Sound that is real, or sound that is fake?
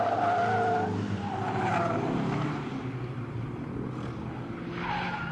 real